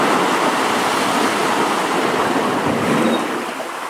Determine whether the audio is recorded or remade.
recorded